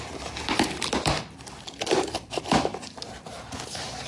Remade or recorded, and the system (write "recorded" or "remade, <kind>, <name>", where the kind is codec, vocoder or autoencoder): remade, vocoder, BigVGAN v2